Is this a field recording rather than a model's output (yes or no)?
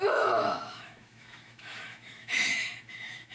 no